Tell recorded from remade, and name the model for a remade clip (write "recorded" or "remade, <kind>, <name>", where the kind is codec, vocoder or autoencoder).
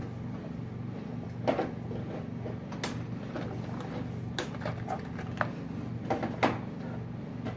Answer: recorded